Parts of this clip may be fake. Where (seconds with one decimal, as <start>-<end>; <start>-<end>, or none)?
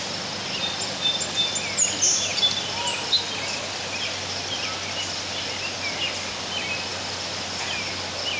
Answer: 2.3-4.3; 6.9-7.6